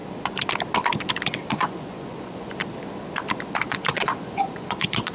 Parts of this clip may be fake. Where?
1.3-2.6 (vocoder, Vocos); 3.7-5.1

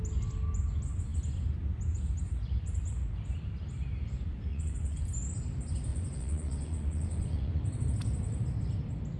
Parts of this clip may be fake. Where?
4.5-5.0 (vocoder, Vocos); 5.9-7.6